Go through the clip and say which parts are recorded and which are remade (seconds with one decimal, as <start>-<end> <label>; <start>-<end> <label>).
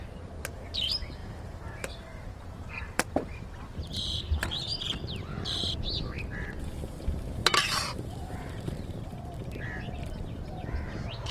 0.0-1.2 recorded; 1.2-5.9 remade; 5.9-7.4 recorded; 7.4-9.2 remade; 9.2-11.3 recorded